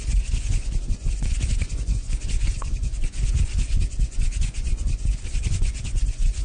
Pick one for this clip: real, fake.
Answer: fake